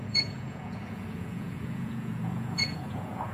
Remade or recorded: remade